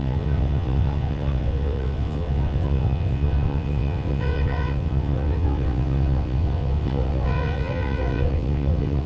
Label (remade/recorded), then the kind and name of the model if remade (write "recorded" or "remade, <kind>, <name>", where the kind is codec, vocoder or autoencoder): remade, vocoder, WaveNeXt